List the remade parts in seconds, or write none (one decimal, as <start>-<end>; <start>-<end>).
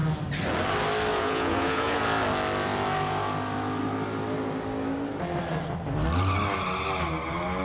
1.1-2.0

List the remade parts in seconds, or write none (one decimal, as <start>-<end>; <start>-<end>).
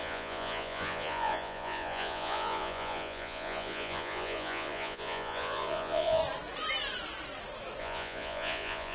0.0-6.2; 7.8-8.9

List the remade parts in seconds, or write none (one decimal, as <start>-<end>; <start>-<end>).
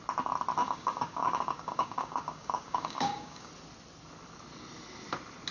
0.6-3.5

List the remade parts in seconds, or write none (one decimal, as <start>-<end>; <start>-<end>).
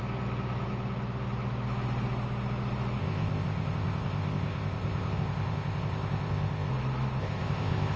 3.0-6.7; 7.2-8.0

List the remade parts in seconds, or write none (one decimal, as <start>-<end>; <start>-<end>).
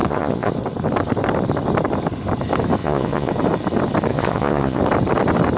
0.0-0.5; 2.8-3.3; 4.1-4.8